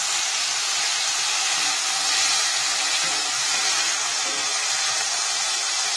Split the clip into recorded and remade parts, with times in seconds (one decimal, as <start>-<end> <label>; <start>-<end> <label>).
0.0-6.0 recorded